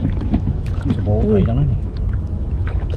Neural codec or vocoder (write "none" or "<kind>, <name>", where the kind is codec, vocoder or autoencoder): autoencoder, DAC-VAE